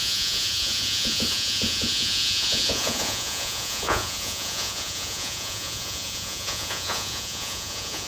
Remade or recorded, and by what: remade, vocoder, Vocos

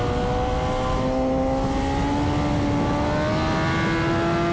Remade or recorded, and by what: recorded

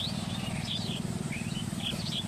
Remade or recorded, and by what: remade, vocoder, BigVGAN v2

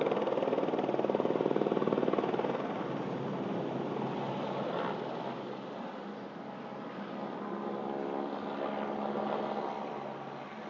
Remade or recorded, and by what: recorded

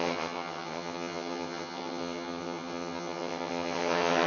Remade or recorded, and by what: remade, vocoder, HiFi-GAN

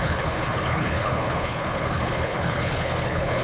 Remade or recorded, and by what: remade, codec, HILCodec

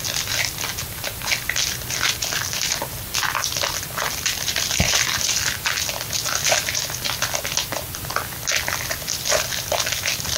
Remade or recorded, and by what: recorded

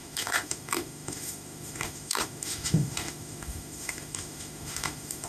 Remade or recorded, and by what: remade, autoencoder, DAC-VAE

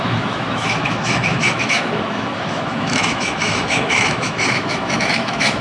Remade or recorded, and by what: remade, autoencoder, DAC-VAE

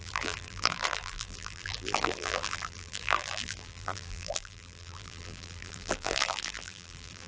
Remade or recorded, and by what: remade, vocoder, BigVGAN v2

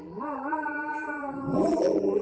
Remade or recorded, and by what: remade, vocoder, BigVGAN v2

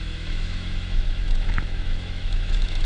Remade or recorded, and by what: remade, autoencoder, DAC-VAE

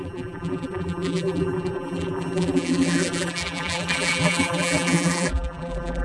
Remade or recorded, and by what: remade, vocoder, BigVGAN v2